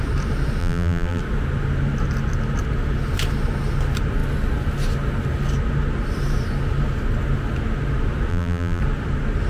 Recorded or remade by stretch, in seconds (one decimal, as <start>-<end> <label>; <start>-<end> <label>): 0.0-0.6 recorded; 0.6-1.2 remade; 1.2-8.3 recorded; 8.3-8.8 remade; 8.8-9.5 recorded